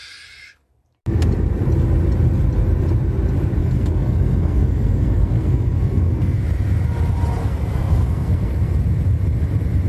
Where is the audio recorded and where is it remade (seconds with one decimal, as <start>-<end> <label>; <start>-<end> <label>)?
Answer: 0.0-3.6 recorded; 3.6-6.4 remade; 6.4-7.4 recorded; 7.4-8.8 remade; 8.8-9.9 recorded